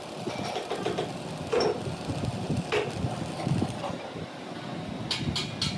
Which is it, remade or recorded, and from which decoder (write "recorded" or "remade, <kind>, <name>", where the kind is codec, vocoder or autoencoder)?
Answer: recorded